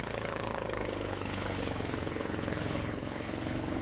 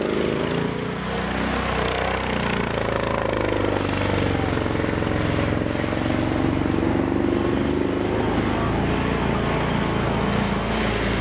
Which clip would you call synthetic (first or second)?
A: first